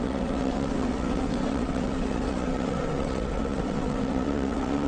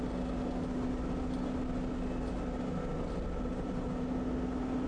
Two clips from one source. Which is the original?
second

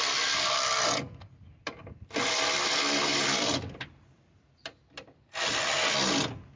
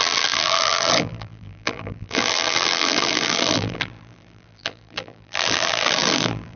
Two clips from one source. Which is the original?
first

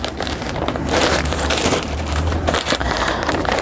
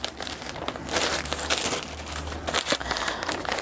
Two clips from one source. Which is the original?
second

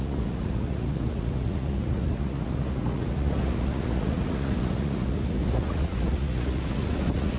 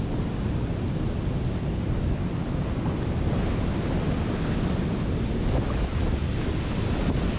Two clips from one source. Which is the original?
second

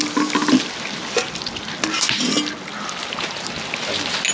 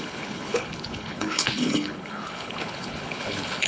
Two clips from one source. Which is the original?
first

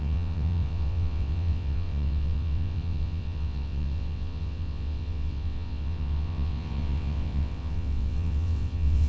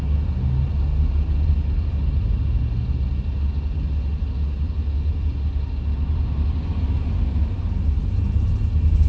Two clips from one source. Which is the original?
second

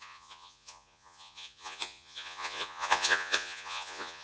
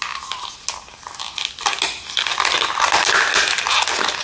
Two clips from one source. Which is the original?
second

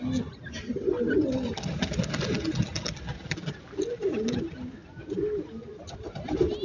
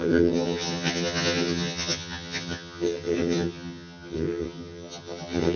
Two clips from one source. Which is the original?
first